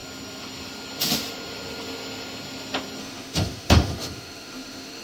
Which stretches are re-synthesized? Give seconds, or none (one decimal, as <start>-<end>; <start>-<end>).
3.0-5.0